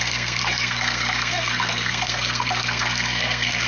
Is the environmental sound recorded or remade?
remade